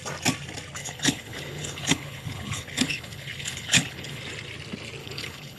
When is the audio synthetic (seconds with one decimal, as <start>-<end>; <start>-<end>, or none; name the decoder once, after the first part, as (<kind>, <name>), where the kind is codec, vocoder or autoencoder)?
0.8-4.2 (codec, HILCodec); 5.0-5.6